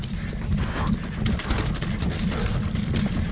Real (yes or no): yes